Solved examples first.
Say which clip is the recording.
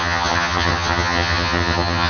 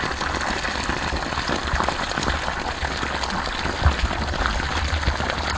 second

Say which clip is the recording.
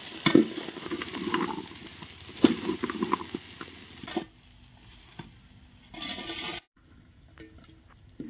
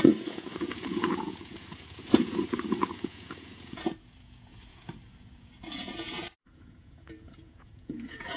first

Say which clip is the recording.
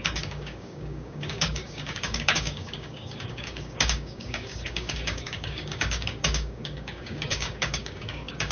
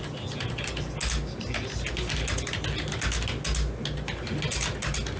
second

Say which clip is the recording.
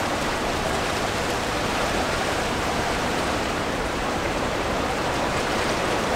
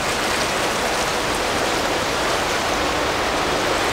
second